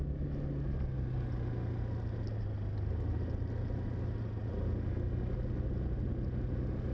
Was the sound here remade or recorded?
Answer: recorded